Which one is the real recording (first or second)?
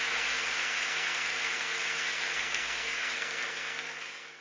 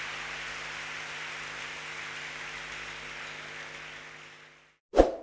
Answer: second